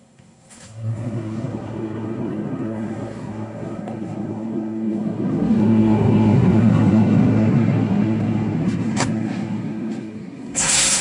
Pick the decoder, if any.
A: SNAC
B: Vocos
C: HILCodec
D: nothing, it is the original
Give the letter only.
A